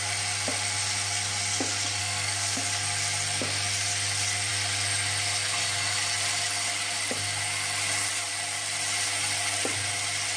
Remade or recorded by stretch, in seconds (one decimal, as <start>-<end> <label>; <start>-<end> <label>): 0.0-2.0 recorded; 2.0-2.6 remade; 2.6-10.4 recorded